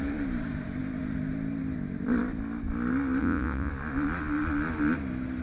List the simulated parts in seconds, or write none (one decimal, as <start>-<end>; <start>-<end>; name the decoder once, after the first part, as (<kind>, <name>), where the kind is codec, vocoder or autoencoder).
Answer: 3.2-3.7 (vocoder, Vocos)